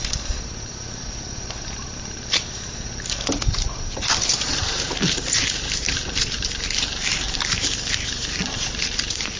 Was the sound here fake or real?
fake